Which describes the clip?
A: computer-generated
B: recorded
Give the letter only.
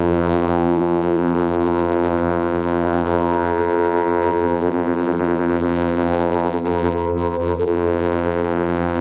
A